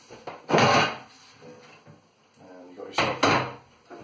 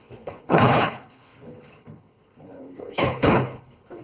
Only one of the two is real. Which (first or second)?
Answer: first